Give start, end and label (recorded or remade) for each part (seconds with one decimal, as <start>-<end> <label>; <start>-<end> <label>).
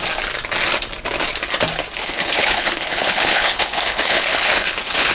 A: 0.0-2.0 recorded; 2.0-5.1 remade